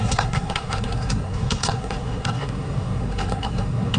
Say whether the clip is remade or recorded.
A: remade